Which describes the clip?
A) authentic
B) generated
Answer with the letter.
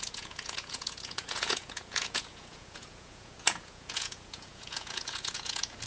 B